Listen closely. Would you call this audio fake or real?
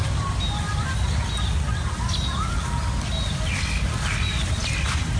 real